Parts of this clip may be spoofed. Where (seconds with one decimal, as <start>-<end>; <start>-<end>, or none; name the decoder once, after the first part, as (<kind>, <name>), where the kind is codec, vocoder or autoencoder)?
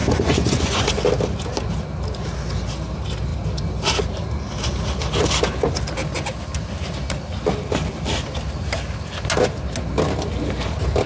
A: 0.0-0.9 (vocoder, Vocos)